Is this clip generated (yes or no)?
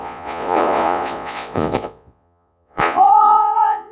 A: yes